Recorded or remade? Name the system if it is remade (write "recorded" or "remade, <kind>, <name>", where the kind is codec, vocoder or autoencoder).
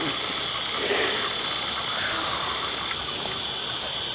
recorded